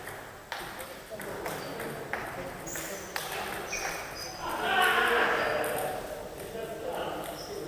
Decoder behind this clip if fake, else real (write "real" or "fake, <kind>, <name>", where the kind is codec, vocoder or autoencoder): real